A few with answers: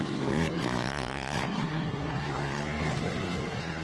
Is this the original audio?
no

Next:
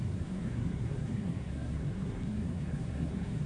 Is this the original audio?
no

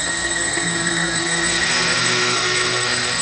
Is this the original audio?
no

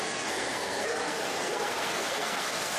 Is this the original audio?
no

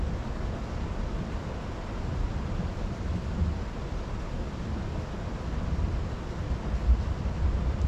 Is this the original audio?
yes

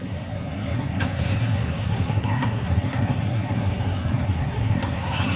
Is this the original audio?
no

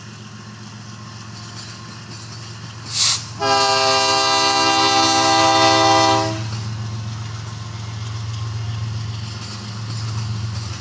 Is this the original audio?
yes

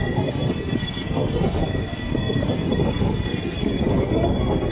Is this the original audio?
no